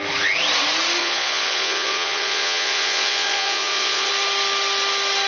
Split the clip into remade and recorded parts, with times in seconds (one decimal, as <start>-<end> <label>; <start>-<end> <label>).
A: 0.0-1.0 recorded; 1.0-4.1 remade; 4.1-5.3 recorded